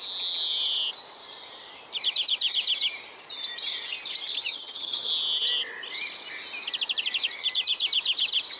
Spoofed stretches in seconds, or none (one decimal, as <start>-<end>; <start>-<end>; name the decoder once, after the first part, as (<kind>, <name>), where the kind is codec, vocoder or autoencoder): 4.4-5.1 (vocoder, HiFi-GAN)